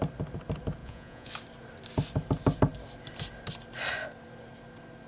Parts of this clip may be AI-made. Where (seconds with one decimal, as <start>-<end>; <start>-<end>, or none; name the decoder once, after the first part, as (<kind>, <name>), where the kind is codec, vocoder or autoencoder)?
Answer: 0.8-1.3 (vocoder, Vocos)